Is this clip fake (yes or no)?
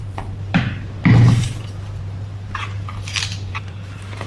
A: yes